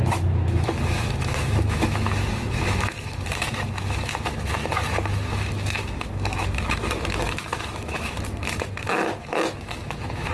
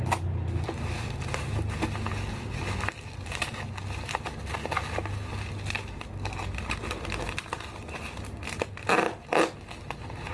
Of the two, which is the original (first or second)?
second